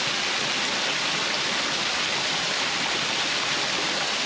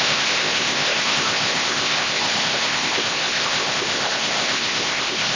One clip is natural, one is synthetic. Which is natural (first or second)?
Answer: first